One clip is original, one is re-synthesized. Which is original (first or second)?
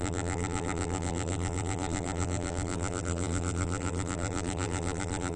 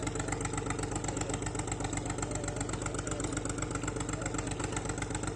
second